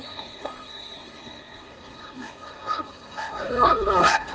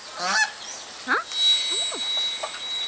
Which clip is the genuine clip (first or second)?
second